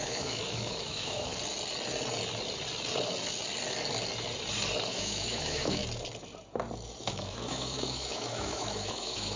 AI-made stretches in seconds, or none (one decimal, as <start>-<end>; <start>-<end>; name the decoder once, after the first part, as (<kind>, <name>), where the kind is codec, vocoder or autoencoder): 0.0-1.3 (autoencoder, DAC-VAE); 4.9-5.8; 7.0-9.4